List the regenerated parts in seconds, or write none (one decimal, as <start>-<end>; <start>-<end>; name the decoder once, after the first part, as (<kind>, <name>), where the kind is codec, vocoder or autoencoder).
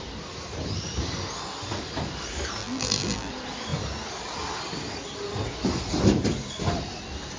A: 2.6-3.3 (vocoder, BigVGAN v2)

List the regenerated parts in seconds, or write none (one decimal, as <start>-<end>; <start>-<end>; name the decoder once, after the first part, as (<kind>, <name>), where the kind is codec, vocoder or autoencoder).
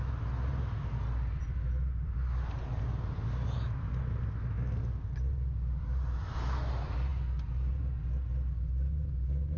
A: none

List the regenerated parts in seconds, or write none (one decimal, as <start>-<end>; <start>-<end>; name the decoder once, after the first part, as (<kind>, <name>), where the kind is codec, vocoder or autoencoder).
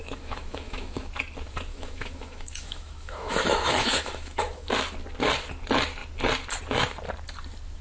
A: 0.0-1.1 (autoencoder, DAC-VAE); 1.7-4.7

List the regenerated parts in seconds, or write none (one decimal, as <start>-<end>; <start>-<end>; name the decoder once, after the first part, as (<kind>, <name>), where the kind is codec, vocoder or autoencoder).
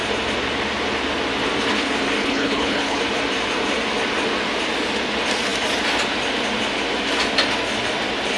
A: 2.2-3.0 (codec, HILCodec)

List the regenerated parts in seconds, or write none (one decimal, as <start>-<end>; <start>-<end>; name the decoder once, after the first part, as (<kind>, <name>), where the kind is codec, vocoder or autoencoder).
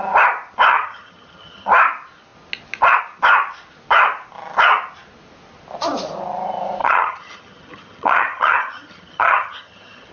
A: 0.7-1.7 (vocoder, HiFi-GAN); 6.8-10.1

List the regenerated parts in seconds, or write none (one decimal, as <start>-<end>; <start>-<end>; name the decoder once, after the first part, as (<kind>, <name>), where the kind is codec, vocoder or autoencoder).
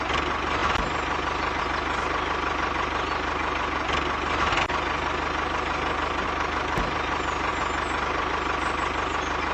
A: none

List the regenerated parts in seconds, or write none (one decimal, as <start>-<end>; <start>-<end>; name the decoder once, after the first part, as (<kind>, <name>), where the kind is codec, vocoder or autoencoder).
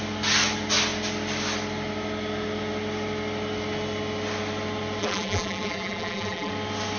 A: 5.0-6.5 (vocoder, BigVGAN v2)